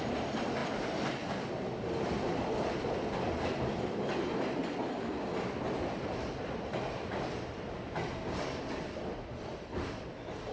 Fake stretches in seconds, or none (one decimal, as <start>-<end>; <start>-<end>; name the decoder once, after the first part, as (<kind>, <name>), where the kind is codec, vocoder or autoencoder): 0.0-10.5 (vocoder, BigVGAN v2)